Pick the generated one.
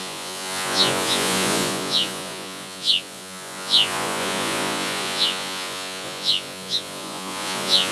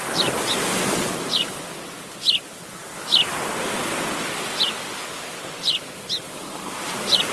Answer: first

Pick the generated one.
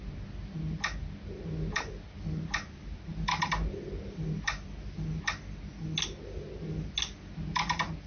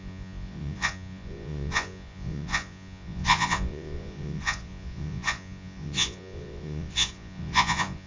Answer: second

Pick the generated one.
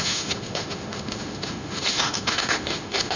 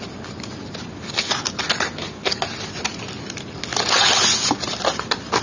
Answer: first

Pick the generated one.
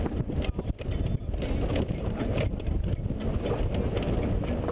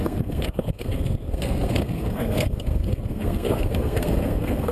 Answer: second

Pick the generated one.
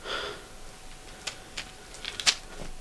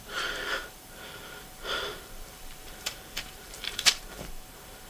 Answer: second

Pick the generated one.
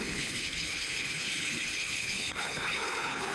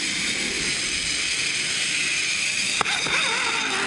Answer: first